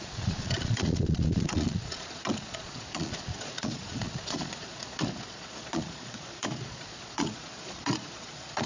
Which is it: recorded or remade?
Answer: remade